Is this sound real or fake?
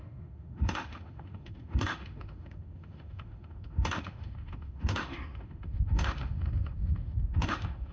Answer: fake